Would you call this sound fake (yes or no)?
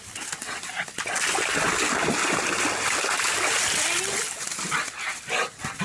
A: no